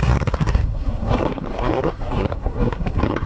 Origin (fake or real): fake